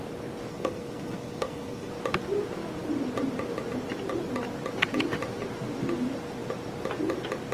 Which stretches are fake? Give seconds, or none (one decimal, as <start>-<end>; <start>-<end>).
0.5-1.9